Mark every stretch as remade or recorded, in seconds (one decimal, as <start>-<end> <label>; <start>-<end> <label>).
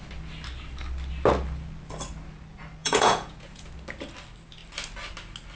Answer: 0.0-2.8 recorded; 2.8-3.7 remade; 3.7-5.6 recorded